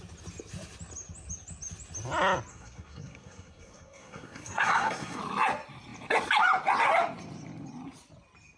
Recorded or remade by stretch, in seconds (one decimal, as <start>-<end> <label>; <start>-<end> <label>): 0.0-2.5 recorded; 2.5-5.2 remade; 5.2-8.6 recorded